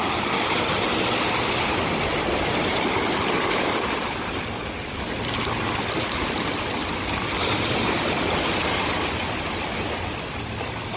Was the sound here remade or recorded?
recorded